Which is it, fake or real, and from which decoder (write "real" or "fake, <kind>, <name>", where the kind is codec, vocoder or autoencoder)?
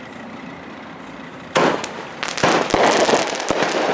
fake, vocoder, BigVGAN v2